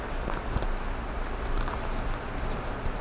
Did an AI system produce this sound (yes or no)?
no